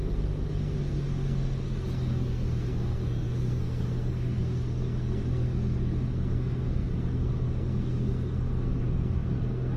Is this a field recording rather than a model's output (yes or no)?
no